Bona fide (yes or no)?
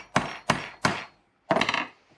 yes